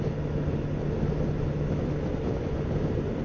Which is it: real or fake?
real